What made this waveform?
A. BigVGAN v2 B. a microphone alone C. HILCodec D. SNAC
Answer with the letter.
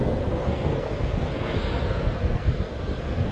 D